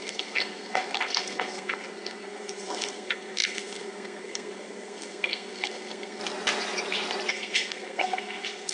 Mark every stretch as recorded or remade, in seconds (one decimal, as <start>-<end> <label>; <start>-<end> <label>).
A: 0.0-6.2 remade; 6.2-7.3 recorded; 7.3-8.7 remade